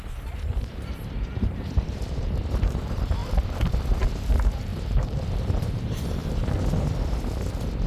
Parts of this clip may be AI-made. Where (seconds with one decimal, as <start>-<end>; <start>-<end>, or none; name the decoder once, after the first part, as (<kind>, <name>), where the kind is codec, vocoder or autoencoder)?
0.0-6.2 (vocoder, BigVGAN v2)